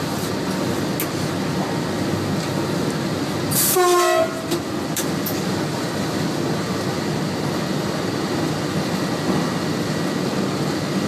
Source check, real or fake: real